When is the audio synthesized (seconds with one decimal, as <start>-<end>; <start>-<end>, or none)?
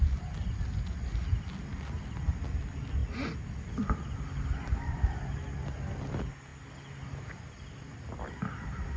none